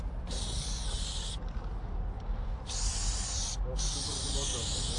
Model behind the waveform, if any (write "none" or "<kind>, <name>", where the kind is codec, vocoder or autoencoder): none